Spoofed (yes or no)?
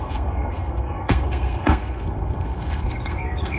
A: yes